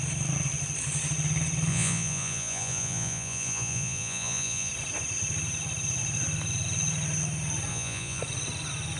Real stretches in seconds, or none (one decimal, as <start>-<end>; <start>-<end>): 0.0-1.7; 4.7-7.7; 8.2-9.0